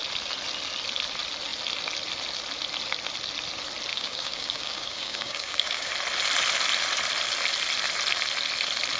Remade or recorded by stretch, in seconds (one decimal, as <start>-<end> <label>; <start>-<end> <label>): 0.0-3.9 recorded; 3.9-5.9 remade; 5.9-9.0 recorded